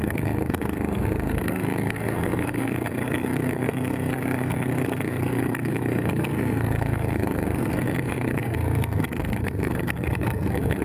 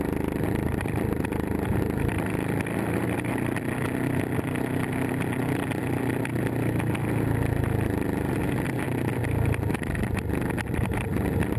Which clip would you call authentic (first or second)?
second